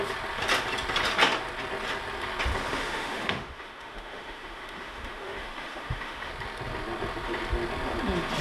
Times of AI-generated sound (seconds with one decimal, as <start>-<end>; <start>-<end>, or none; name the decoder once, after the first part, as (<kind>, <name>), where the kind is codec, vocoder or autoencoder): 2.7-6.3 (autoencoder, DAC-VAE)